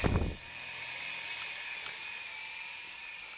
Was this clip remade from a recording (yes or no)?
no